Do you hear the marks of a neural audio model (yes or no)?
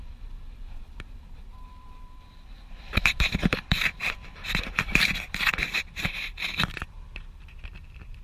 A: yes